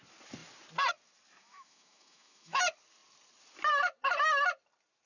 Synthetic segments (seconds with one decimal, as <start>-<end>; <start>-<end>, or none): 1.4-2.6